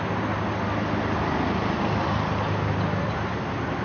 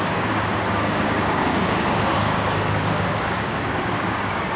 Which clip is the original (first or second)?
first